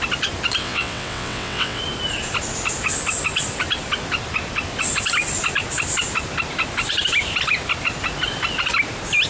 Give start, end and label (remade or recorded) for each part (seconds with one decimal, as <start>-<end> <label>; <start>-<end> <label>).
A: 0.0-0.6 recorded; 0.6-1.8 remade; 1.8-9.3 recorded